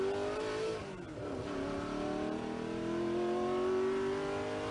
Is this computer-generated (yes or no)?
no